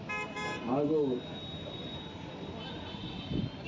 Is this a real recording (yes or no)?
yes